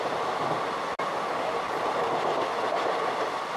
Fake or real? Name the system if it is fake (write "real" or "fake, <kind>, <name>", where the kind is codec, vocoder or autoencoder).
real